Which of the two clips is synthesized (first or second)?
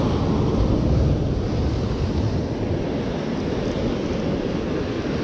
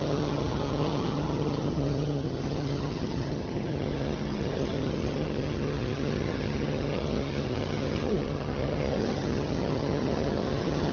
second